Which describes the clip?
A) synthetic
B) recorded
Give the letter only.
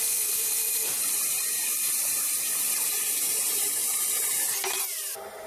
B